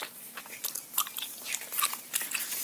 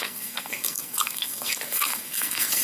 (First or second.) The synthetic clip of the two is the second